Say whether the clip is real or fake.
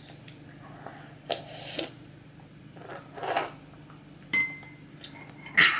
real